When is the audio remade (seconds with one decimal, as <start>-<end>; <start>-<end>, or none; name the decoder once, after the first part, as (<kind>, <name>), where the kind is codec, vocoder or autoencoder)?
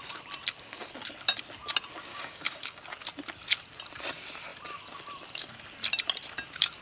2.1-2.8 (codec, DAC)